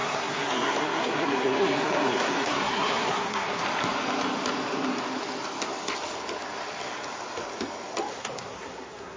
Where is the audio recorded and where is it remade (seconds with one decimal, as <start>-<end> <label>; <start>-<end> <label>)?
0.0-3.6 remade; 3.6-8.1 recorded; 8.1-9.2 remade